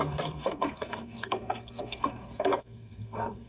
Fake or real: fake